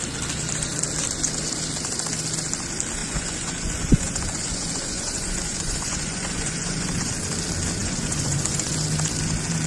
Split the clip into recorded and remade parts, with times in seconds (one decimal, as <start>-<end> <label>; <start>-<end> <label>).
0.0-3.0 recorded; 3.0-7.1 remade; 7.1-7.8 recorded; 7.8-8.8 remade; 8.8-9.7 recorded